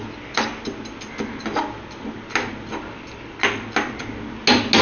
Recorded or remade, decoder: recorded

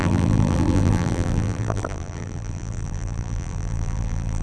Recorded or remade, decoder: remade, vocoder, BigVGAN v2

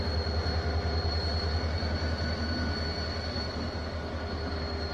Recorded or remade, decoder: recorded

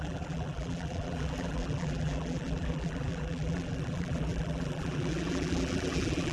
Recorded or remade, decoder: remade, vocoder, BigVGAN v2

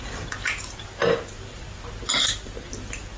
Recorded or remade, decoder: recorded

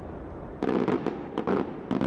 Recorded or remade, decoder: recorded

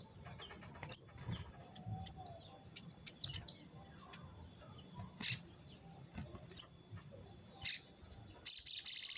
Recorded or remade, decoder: recorded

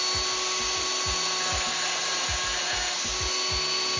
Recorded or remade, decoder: recorded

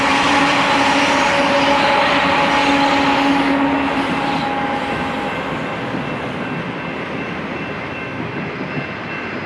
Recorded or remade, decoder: recorded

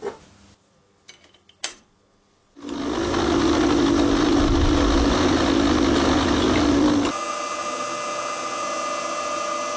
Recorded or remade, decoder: recorded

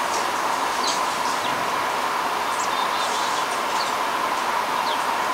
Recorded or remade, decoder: recorded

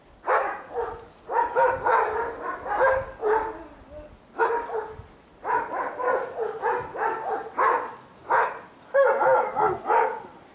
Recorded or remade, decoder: recorded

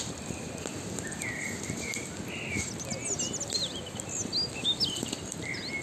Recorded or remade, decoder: recorded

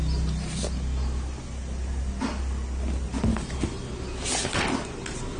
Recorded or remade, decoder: recorded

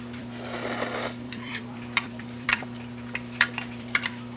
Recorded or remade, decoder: remade, vocoder, BigVGAN v2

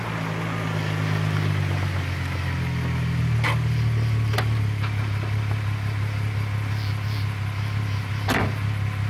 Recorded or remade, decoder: recorded